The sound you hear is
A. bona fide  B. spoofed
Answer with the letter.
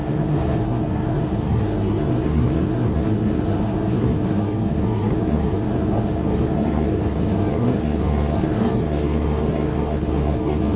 B